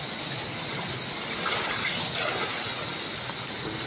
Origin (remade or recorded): recorded